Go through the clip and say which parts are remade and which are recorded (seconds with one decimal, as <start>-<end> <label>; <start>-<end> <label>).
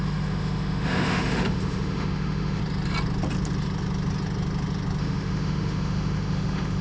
0.0-2.6 remade; 2.6-5.0 recorded; 5.0-6.8 remade